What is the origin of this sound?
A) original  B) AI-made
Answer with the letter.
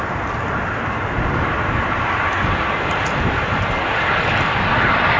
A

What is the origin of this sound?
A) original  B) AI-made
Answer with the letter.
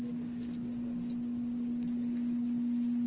A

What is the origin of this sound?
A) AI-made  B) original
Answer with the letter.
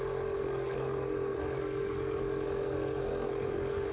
A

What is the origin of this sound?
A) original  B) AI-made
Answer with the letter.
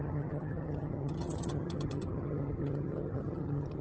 B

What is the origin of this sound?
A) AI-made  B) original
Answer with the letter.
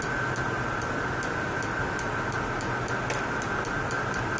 B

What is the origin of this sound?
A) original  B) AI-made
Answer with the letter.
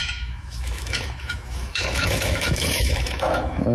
B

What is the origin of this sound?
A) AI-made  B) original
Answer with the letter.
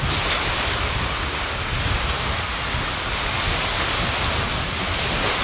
B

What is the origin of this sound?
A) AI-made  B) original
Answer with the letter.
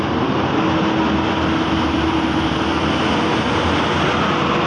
B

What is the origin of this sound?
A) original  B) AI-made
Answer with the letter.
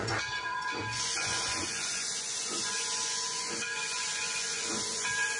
B